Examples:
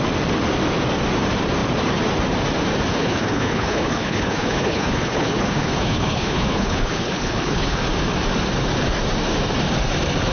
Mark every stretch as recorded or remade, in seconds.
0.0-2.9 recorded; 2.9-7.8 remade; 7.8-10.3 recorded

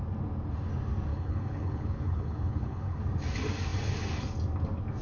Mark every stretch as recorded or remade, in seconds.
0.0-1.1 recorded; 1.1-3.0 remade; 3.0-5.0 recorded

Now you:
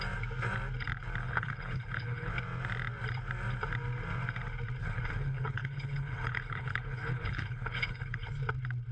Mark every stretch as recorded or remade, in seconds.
0.0-1.2 recorded; 1.2-2.3 remade; 2.3-4.8 recorded; 4.8-8.3 remade; 8.3-8.9 recorded

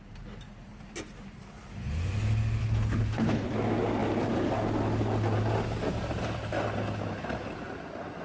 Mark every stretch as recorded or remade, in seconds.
0.0-2.6 recorded; 2.6-3.5 remade; 3.5-8.2 recorded

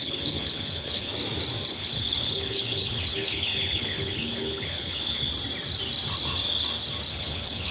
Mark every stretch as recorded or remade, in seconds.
0.0-1.1 remade; 1.1-1.7 recorded; 1.7-5.3 remade; 5.3-7.1 recorded; 7.1-7.7 remade